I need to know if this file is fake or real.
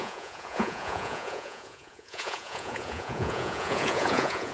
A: fake